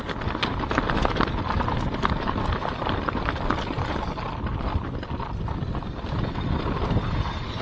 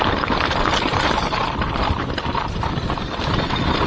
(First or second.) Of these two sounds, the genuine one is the first